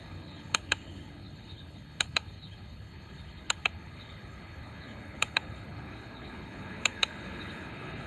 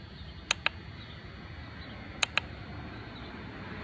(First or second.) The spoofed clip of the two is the first